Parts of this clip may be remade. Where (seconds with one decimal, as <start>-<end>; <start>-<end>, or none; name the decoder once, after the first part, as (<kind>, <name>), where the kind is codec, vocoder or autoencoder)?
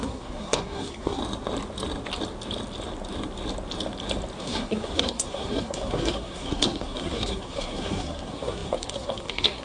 0.0-1.2 (codec, SNAC); 4.4-9.6